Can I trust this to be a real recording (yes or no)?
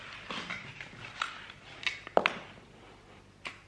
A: yes